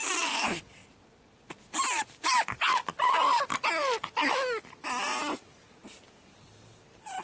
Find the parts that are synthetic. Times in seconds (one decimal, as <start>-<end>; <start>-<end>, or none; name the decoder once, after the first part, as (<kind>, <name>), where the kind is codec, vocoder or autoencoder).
none